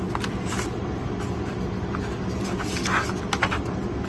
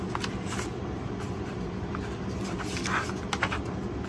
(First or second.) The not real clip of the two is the second